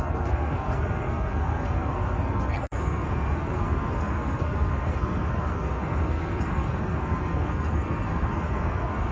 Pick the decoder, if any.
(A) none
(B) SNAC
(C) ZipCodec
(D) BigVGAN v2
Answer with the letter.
B